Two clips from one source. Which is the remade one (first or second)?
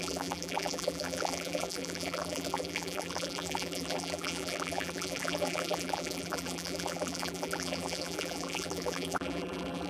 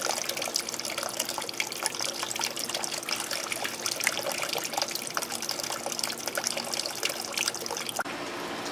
first